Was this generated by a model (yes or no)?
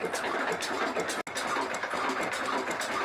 no